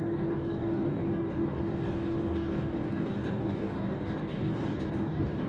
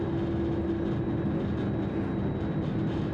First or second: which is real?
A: second